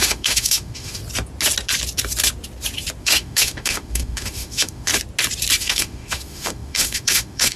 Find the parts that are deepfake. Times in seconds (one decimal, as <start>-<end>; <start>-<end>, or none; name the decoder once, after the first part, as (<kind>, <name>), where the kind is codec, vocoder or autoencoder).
0.0-1.0 (autoencoder, DAC-VAE); 3.0-4.9; 5.6-7.6